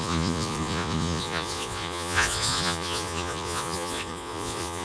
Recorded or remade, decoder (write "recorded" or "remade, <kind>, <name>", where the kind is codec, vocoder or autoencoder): remade, vocoder, Vocos